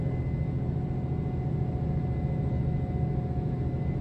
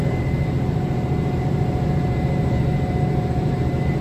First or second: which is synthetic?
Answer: second